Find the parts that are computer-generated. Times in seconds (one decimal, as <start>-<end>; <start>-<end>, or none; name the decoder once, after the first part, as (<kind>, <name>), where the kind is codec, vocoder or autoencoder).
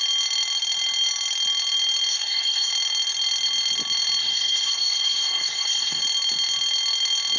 2.1-2.7 (codec, SNAC); 4.2-6.0